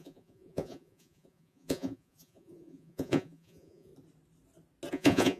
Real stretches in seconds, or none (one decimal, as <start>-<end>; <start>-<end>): 3.9-4.9